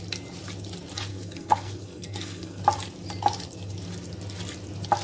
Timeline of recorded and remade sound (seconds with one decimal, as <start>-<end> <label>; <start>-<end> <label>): 0.0-1.1 recorded; 1.1-2.6 remade; 2.6-5.0 recorded